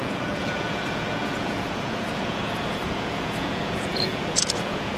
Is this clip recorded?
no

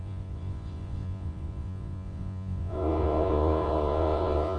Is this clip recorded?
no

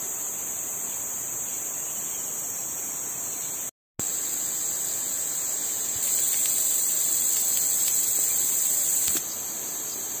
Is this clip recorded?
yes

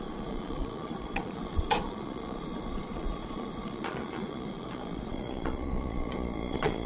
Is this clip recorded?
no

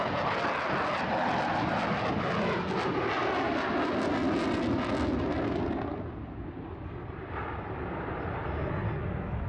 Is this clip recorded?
yes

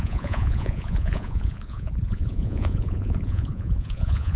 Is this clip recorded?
no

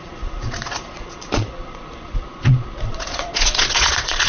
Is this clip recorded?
no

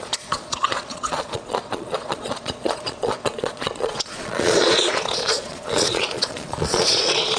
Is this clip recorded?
no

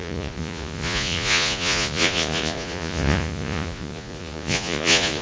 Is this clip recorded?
no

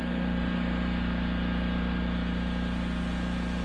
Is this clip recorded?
yes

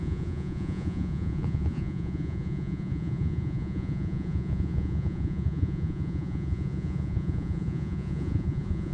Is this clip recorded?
no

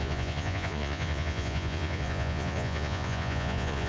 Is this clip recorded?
no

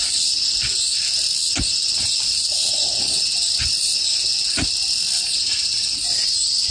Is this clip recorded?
yes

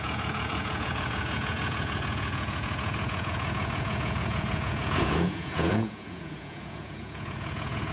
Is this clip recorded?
no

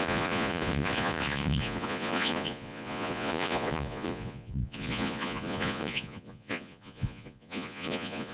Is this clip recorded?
no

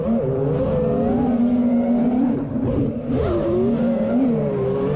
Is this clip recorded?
yes